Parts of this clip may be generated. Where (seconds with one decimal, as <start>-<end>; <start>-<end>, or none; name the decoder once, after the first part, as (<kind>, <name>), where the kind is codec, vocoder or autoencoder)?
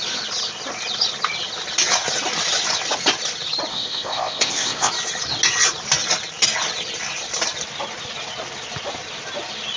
3.7-4.9 (codec, ZipCodec)